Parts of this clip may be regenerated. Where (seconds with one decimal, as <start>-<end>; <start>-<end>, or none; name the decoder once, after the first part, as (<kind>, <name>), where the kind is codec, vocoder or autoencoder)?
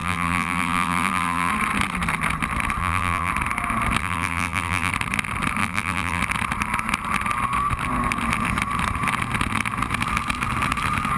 0.0-1.5 (vocoder, BigVGAN v2); 2.8-3.3; 4.0-4.9; 5.6-6.2